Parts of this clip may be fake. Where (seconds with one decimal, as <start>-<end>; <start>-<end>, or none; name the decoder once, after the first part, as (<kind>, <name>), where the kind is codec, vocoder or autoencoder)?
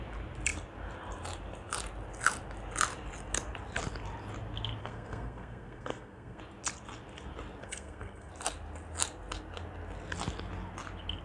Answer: 4.8-6.4 (codec, SNAC); 7.6-8.3